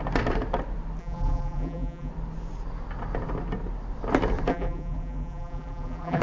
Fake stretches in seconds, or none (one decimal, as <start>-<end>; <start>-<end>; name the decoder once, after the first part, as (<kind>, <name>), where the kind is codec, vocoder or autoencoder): 1.0-2.1 (vocoder, BigVGAN v2); 4.5-6.2